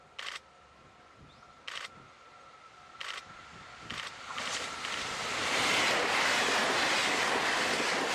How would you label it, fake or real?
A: real